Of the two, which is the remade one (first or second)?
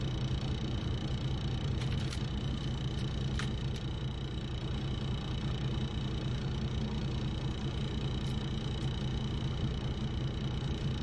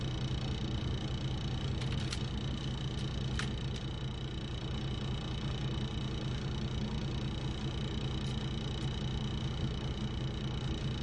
first